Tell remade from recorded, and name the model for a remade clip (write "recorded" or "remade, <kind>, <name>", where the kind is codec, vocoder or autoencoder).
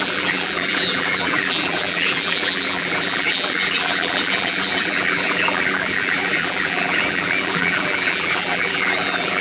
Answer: remade, vocoder, BigVGAN v2